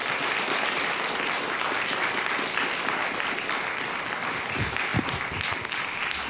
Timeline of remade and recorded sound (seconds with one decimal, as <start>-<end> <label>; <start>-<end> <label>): 0.0-6.3 recorded